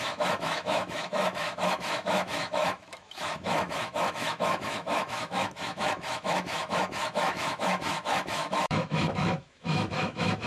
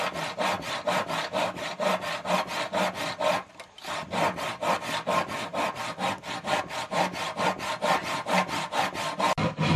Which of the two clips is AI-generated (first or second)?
first